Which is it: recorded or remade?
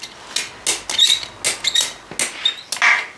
recorded